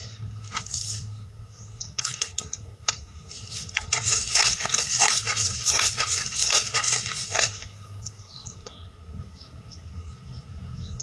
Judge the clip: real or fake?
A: fake